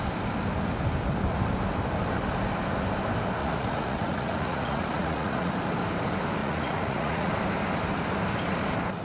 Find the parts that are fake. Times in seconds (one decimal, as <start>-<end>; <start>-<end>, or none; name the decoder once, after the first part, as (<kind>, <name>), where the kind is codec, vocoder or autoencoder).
3.4-5.5 (vocoder, Vocos); 6.4-7.3